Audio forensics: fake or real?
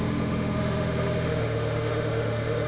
fake